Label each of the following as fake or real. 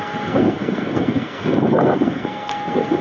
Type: fake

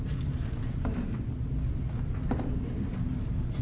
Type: real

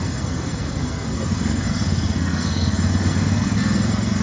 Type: fake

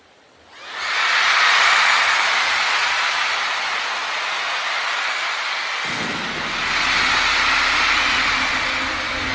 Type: real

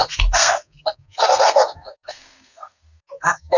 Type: fake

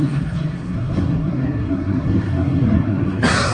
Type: fake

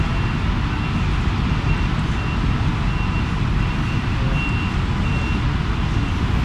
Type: real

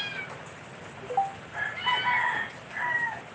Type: real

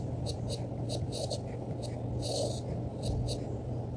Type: real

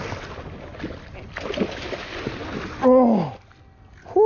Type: real